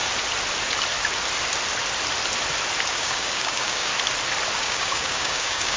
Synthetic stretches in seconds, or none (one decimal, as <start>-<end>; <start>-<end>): 2.9-3.9; 4.6-5.8